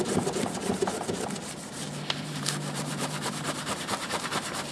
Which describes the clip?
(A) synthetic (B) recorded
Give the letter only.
A